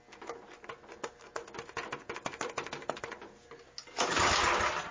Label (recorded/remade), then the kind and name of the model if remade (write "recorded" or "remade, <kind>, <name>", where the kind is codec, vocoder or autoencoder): recorded